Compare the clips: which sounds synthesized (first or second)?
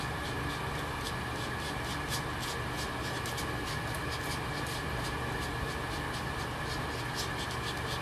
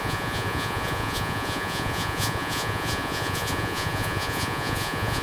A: second